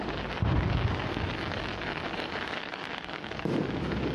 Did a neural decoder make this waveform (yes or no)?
yes